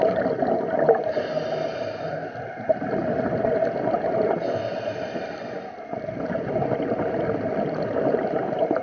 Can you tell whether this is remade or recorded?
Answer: recorded